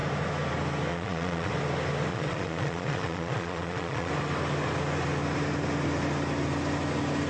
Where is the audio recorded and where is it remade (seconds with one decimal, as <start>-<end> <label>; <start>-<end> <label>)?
0.0-0.9 recorded; 0.9-1.5 remade; 1.5-2.1 recorded; 2.1-4.1 remade; 4.1-7.3 recorded